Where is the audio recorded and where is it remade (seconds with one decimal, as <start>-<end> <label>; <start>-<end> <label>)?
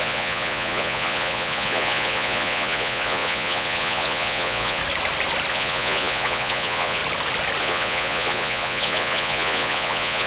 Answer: 0.0-4.8 remade; 4.8-5.5 recorded; 5.5-7.0 remade; 7.0-7.6 recorded; 7.6-10.3 remade